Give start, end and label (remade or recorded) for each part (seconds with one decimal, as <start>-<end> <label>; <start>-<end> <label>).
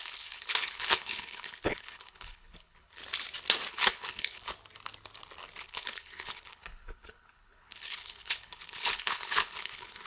0.0-3.0 remade; 3.0-3.7 recorded; 3.7-4.5 remade; 4.5-5.6 recorded; 5.6-10.1 remade